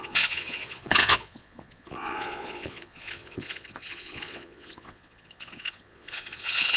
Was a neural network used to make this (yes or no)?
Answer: yes